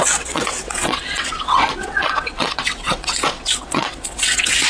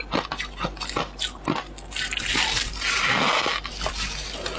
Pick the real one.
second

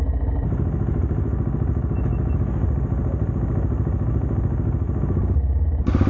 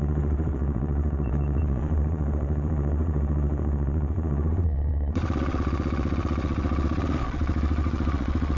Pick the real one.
first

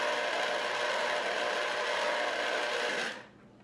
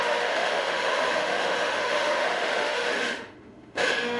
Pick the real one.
first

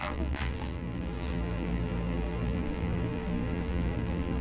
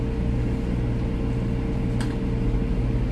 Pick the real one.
second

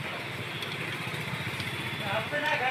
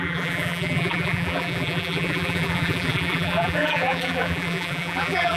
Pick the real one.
first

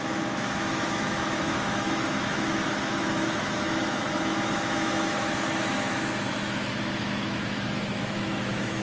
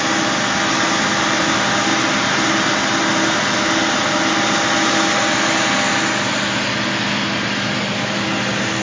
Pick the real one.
second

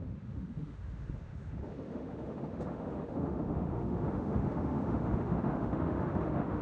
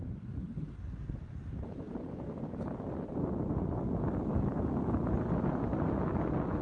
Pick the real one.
second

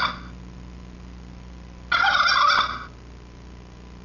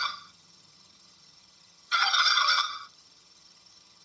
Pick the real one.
first